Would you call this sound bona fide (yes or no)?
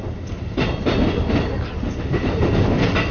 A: yes